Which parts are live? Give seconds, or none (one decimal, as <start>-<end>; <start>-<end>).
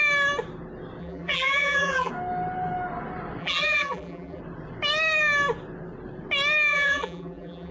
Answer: 0.0-1.0; 2.1-3.4; 4.4-6.7